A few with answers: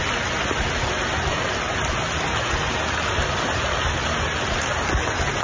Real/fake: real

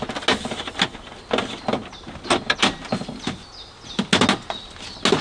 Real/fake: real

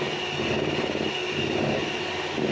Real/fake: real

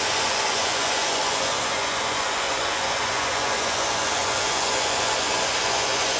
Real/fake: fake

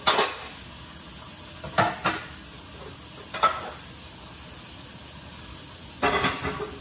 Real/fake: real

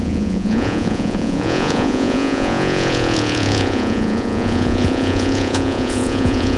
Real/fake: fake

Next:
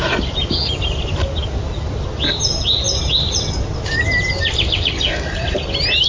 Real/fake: real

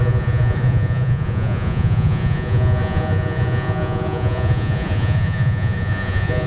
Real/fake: fake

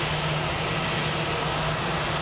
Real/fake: real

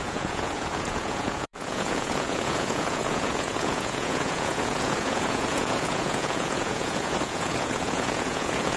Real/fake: fake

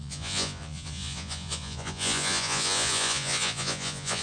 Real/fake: fake